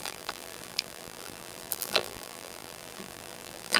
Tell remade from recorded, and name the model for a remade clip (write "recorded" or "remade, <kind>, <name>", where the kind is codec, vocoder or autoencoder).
remade, vocoder, BigVGAN v2